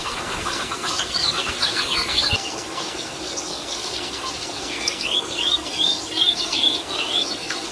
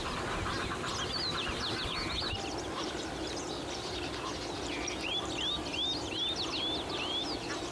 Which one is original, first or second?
second